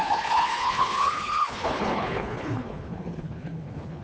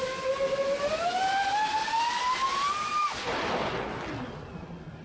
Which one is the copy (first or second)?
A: first